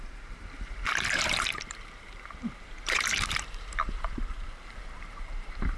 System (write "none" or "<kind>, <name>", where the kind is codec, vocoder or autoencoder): vocoder, BigVGAN v2